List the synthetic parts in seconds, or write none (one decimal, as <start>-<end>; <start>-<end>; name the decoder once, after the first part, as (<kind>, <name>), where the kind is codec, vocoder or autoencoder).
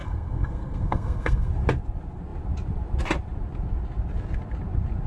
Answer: 0.0-1.5 (codec, SNAC)